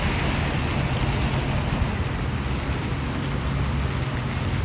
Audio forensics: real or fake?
real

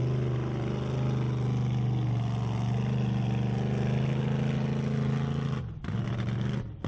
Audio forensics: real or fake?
real